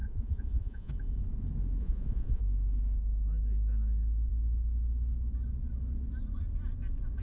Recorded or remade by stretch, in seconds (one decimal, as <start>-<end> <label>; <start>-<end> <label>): 0.0-0.9 remade; 0.9-1.8 recorded; 1.8-2.4 remade; 2.4-7.2 recorded